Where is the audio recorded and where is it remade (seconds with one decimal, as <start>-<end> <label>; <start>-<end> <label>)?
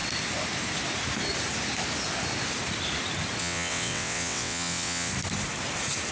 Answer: 0.0-3.4 recorded; 3.4-5.1 remade; 5.1-6.1 recorded